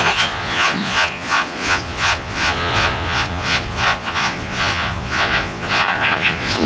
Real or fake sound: fake